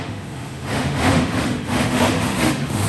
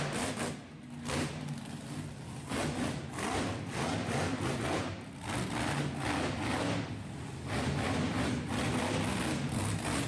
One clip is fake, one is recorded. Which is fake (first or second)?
first